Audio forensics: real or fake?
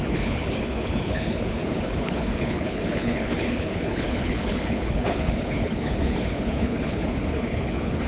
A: fake